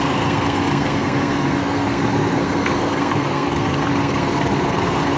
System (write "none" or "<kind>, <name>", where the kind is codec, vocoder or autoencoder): codec, SNAC